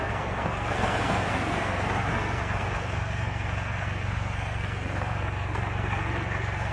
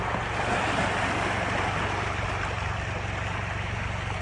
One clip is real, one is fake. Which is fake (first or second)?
first